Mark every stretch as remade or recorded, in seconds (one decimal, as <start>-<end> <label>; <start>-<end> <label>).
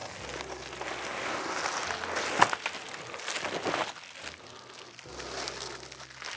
0.0-6.4 recorded